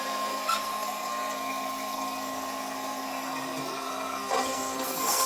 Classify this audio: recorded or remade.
remade